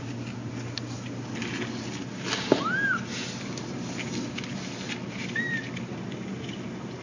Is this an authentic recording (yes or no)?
yes